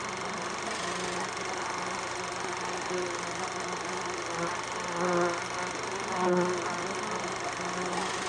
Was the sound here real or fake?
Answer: real